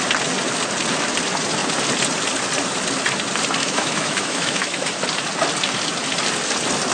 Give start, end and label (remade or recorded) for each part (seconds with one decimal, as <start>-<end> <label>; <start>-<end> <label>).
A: 0.0-3.6 recorded; 3.6-4.9 remade; 4.9-6.9 recorded

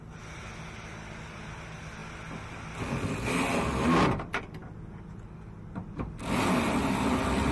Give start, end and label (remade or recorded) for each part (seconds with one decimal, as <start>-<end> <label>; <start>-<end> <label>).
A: 0.0-7.5 recorded

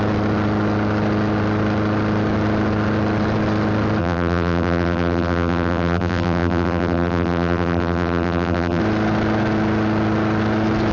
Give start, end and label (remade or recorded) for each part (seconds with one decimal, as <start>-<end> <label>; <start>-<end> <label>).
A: 0.0-4.0 recorded; 4.0-8.8 remade; 8.8-10.9 recorded